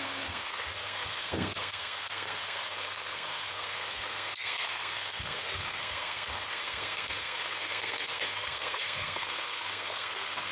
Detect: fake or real fake